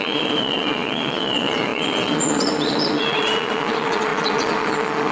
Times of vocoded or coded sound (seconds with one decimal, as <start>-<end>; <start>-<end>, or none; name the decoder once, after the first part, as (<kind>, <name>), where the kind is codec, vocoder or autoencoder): 0.0-5.1 (vocoder, Vocos)